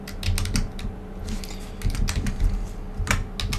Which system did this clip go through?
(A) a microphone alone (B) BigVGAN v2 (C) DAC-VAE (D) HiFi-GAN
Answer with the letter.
A